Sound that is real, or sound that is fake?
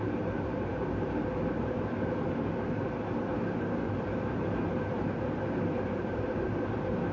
fake